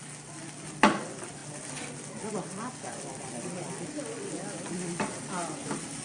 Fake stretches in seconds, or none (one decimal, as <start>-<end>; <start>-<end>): none